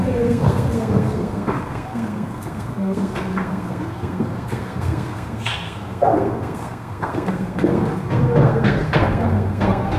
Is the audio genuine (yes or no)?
no